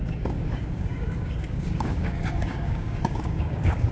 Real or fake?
fake